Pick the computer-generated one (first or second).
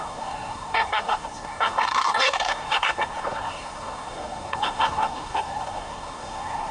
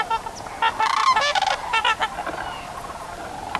first